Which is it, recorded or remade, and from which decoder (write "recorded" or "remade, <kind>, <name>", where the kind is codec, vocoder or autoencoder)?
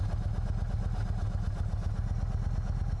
recorded